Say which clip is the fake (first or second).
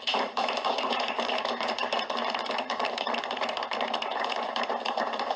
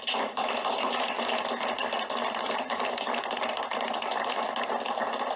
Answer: first